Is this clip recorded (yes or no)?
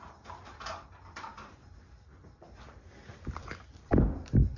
yes